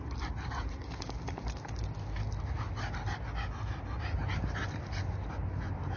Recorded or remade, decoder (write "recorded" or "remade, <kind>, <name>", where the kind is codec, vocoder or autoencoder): recorded